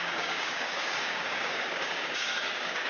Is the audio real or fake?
fake